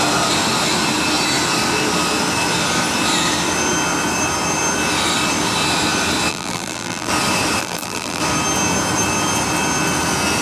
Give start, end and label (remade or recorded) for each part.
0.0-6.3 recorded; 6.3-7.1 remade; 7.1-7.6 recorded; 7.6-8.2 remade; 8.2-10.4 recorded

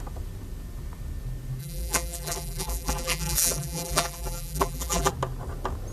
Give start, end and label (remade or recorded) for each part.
0.0-1.6 recorded; 1.6-5.1 remade; 5.1-5.9 recorded

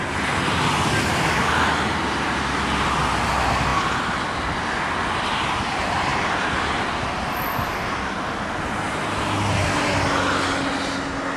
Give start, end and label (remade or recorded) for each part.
0.0-11.4 recorded